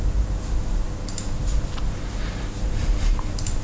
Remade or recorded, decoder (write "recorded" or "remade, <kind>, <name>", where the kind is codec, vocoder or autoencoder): remade, vocoder, BigVGAN v2